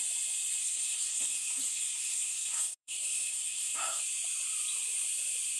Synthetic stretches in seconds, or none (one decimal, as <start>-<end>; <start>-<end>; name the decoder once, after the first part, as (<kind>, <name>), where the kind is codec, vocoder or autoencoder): 0.6-4.0 (codec, SNAC)